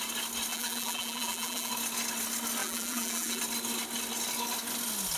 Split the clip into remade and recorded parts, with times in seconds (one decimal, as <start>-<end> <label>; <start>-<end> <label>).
0.0-0.5 recorded; 0.5-1.7 remade; 1.7-2.6 recorded; 2.6-3.4 remade; 3.4-5.2 recorded